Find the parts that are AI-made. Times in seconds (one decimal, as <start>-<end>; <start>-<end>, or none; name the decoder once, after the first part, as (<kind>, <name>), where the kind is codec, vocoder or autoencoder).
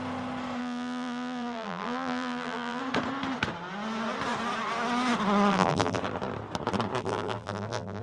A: 0.6-2.8 (vocoder, BigVGAN v2); 5.5-6.0; 7.0-8.0